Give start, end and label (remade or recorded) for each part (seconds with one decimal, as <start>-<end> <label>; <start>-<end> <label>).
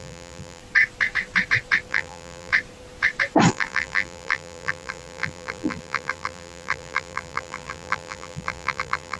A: 0.0-0.6 remade; 0.6-1.9 recorded; 1.9-2.5 remade; 2.5-3.5 recorded; 3.5-9.2 remade